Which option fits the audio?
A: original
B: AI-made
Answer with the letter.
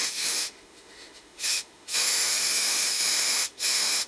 B